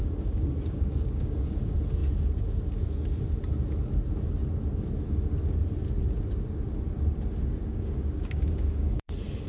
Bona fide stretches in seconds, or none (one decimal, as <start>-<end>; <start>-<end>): 1.5-7.6; 9.1-9.5